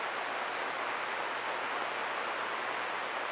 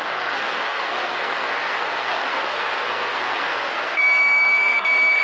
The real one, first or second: first